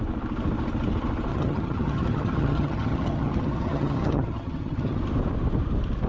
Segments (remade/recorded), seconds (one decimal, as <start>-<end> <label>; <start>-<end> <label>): 0.0-1.3 recorded; 1.3-5.0 remade; 5.0-6.1 recorded